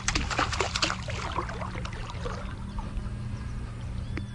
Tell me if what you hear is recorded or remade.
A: recorded